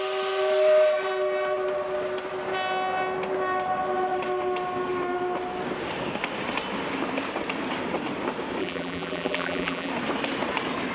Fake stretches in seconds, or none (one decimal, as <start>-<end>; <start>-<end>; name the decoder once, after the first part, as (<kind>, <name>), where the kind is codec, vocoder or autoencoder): 8.6-9.9 (vocoder, BigVGAN v2)